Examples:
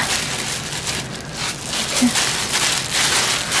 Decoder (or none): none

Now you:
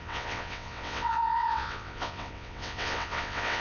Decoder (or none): vocoder, WaveNeXt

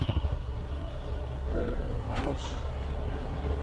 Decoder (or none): codec, SNAC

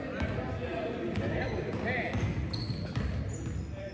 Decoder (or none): none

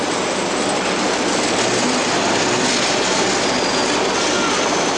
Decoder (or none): none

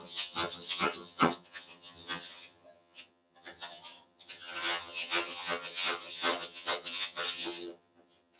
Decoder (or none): vocoder, HiFi-GAN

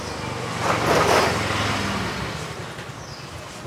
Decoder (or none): none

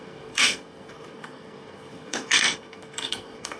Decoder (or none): codec, SNAC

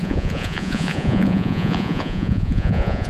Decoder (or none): vocoder, Vocos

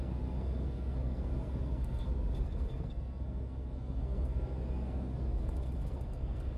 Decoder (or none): codec, SNAC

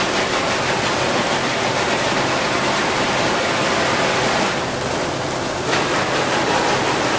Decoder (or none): none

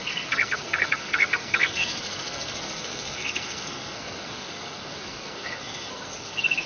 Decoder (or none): codec, SNAC